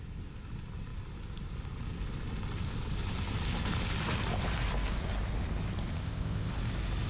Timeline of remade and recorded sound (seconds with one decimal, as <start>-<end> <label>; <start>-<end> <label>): 0.0-6.0 recorded; 6.0-6.5 remade; 6.5-7.1 recorded